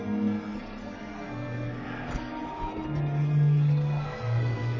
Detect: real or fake fake